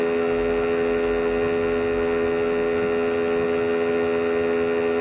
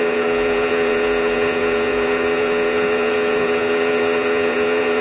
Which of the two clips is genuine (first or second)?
first